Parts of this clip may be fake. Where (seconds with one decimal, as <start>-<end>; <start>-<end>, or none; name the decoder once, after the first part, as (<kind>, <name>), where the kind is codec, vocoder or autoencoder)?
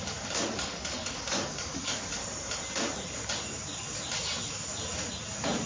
0.0-2.2 (codec, DAC)